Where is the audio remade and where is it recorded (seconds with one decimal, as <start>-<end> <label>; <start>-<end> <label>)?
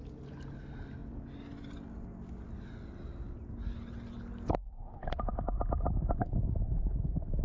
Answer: 0.0-7.4 recorded